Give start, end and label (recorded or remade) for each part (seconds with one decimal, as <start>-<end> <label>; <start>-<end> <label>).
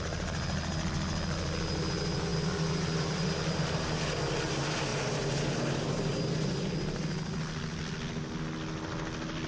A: 0.0-9.5 recorded